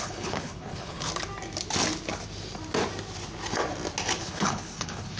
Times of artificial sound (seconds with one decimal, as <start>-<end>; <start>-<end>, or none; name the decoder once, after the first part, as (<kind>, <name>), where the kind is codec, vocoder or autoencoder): 0.0-1.1 (codec, HILCodec); 4.2-5.2